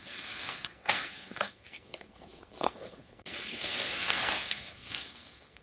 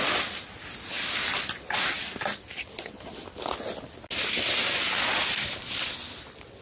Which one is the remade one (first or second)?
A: first